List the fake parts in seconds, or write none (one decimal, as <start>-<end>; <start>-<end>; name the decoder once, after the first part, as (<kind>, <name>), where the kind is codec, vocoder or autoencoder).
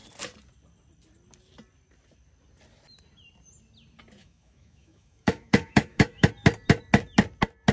4.2-6.3 (autoencoder, DAC-VAE)